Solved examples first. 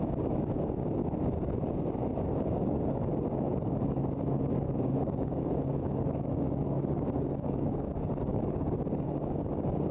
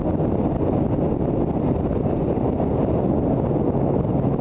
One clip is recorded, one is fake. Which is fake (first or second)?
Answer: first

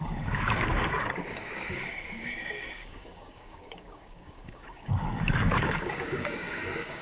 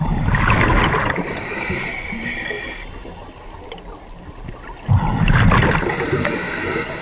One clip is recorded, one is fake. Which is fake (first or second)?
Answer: first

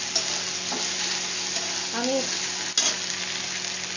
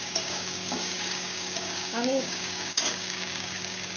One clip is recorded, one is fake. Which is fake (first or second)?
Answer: second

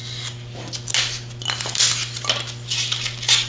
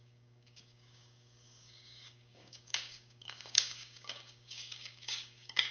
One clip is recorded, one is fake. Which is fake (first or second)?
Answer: second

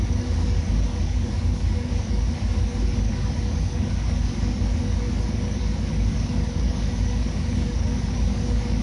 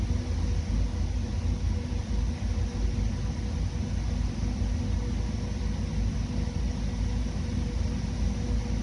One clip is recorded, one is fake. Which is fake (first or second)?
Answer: first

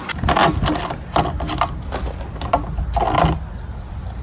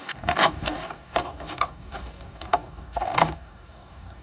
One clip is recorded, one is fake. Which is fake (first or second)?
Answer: second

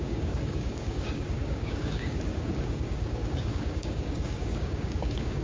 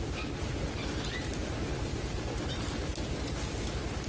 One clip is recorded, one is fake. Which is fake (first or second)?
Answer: first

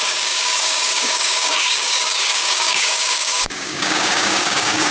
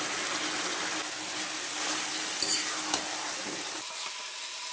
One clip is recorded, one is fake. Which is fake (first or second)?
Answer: first